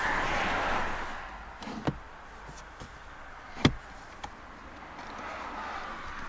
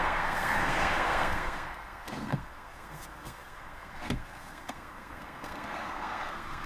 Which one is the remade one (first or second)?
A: second